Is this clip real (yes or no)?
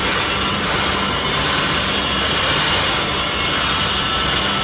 yes